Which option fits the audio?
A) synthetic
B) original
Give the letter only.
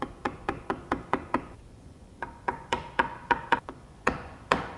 A